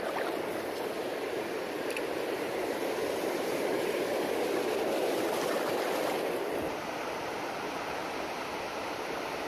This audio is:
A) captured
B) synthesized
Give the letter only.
A